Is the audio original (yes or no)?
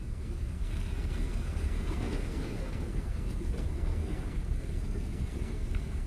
no